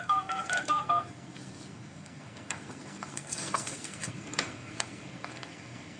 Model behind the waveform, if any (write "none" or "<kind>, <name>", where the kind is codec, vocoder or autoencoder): codec, SNAC